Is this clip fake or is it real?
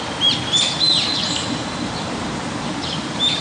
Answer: real